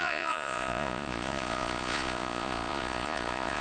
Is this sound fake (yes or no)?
yes